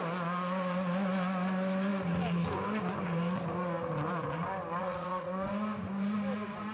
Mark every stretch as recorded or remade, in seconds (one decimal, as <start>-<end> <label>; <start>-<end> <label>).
0.0-4.8 recorded; 4.8-5.5 remade; 5.5-6.7 recorded